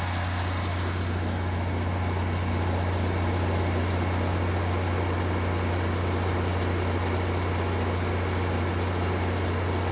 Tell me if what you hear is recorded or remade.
recorded